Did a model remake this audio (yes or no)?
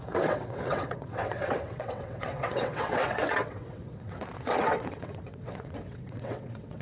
yes